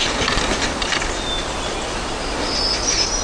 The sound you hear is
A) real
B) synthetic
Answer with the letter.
A